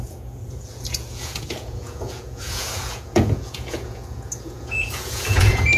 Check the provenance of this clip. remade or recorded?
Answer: remade